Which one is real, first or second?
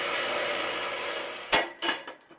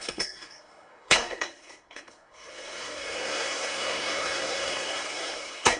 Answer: first